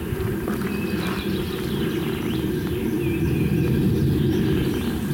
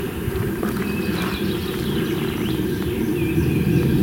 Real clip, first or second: first